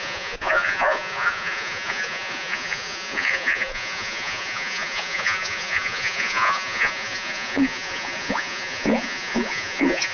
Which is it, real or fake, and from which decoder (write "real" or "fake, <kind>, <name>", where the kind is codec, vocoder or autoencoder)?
fake, vocoder, Vocos